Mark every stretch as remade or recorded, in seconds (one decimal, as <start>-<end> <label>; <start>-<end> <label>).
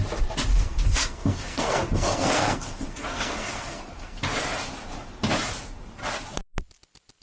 0.0-0.5 recorded; 0.5-4.2 remade; 4.2-7.2 recorded